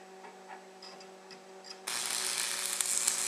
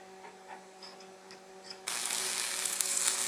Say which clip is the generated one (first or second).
second